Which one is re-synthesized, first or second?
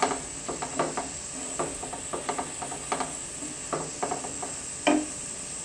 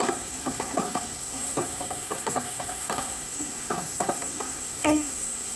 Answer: second